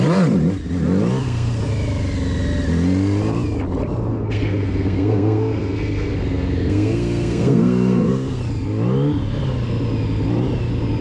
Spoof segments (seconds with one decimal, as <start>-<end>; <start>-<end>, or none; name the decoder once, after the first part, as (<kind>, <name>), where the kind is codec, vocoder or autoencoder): 1.2-1.7 (codec, SNAC); 4.1-8.4

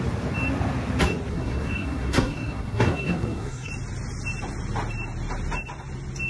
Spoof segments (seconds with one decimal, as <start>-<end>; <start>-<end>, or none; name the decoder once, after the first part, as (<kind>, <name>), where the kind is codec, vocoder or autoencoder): 1.3-3.7 (codec, SNAC)

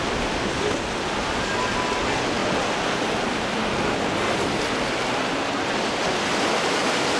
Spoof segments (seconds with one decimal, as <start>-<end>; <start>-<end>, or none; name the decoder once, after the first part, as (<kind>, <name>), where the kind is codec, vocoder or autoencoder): none

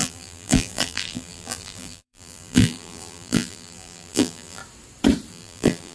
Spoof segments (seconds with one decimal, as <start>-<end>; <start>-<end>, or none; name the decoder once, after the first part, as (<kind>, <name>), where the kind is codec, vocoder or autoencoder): 0.0-4.6 (vocoder, BigVGAN v2); 5.3-5.9

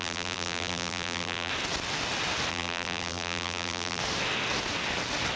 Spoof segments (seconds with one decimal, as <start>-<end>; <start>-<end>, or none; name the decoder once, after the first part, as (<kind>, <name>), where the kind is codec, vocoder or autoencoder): 0.0-1.5 (vocoder, BigVGAN v2); 2.5-4.0

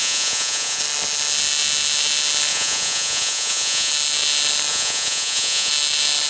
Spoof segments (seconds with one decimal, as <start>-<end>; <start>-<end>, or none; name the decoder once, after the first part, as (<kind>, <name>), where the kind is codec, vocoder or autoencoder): 0.0-0.8 (vocoder, Vocos); 2.5-3.9; 4.7-5.7